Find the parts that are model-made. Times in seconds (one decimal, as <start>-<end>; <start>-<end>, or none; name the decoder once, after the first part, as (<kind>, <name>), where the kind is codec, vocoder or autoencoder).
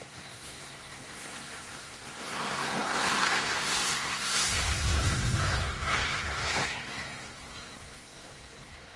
0.0-9.0 (codec, SNAC)